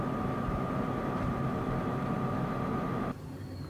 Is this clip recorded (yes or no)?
yes